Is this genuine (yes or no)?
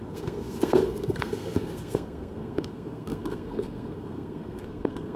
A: no